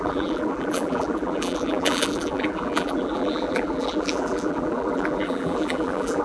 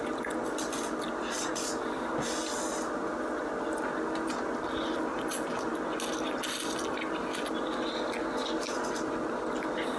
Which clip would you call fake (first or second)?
first